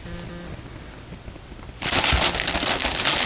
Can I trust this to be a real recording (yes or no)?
yes